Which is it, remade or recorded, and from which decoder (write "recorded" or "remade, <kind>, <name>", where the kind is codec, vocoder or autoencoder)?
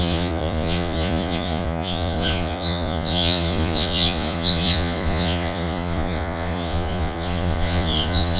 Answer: remade, vocoder, Vocos